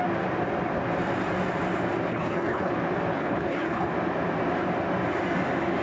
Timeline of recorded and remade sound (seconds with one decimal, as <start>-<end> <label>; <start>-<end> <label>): 0.0-2.1 recorded; 2.1-2.7 remade; 2.7-3.1 recorded; 3.1-3.9 remade; 3.9-5.8 recorded